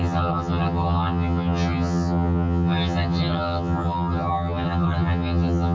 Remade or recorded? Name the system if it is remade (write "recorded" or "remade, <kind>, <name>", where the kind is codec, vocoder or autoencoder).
remade, vocoder, HiFi-GAN